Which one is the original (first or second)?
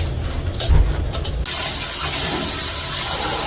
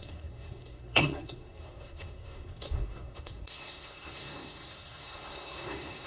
first